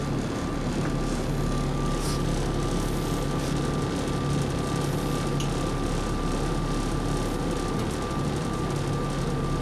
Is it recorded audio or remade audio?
recorded